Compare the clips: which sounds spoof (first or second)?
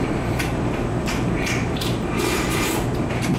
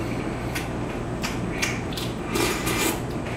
first